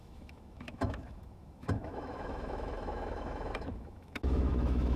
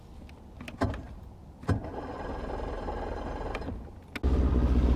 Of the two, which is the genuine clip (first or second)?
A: second